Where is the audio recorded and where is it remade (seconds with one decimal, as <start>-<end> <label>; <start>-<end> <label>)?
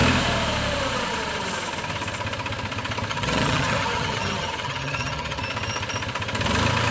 0.0-3.1 recorded; 3.1-5.4 remade; 5.4-6.9 recorded